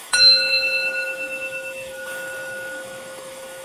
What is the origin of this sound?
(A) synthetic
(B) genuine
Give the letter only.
A